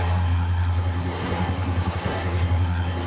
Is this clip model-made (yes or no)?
yes